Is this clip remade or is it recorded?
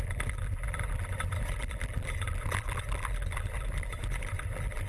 remade